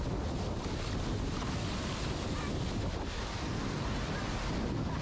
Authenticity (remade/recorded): recorded